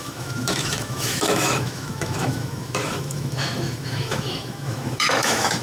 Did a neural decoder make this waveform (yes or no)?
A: yes